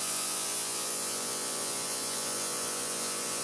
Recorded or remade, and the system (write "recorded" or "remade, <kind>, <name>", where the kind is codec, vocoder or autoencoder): remade, vocoder, Vocos